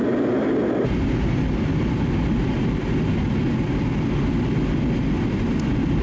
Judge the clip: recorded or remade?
recorded